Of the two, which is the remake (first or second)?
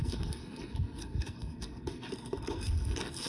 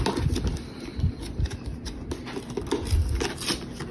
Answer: first